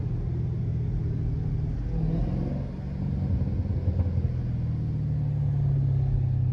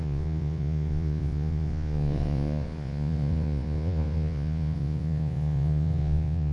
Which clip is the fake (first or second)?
second